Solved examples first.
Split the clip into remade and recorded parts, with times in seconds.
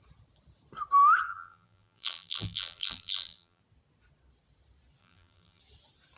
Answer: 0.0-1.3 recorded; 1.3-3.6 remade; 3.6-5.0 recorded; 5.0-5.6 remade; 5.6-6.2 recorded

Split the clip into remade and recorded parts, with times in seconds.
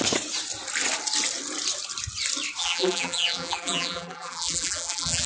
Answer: 0.0-2.6 recorded; 2.6-5.3 remade